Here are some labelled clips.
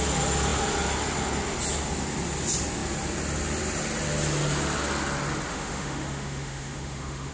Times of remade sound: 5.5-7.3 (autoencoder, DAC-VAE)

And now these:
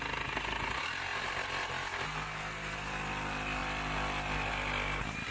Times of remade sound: none

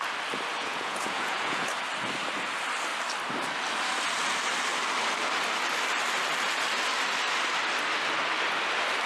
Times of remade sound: 0.6-1.6 (vocoder, Vocos)

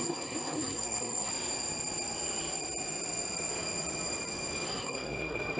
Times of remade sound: 0.0-1.3 (codec, SNAC); 4.7-5.6

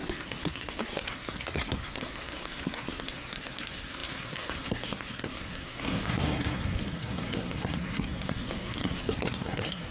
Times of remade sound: 0.0-9.9 (codec, SNAC)

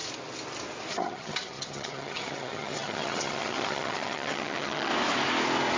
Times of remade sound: 0.9-4.9 (vocoder, HiFi-GAN)

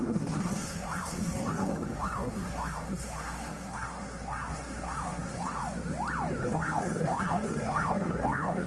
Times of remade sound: 0.0-5.6 (codec, SNAC); 6.4-8.7